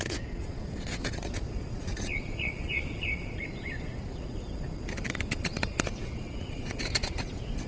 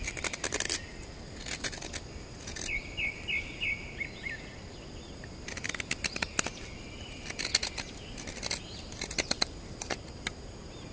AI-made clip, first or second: first